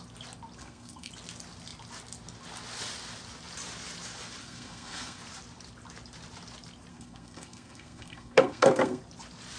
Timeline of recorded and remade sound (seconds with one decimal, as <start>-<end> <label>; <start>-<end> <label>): 0.0-0.6 recorded; 0.6-1.1 remade; 1.1-4.4 recorded; 4.4-5.2 remade; 5.2-6.9 recorded; 6.9-9.0 remade; 9.0-9.6 recorded